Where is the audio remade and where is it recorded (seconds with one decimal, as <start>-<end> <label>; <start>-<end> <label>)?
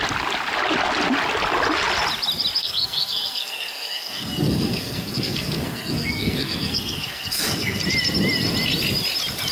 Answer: 0.0-2.6 recorded; 2.6-7.8 remade; 7.8-9.5 recorded